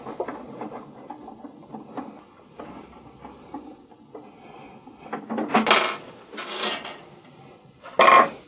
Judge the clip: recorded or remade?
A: recorded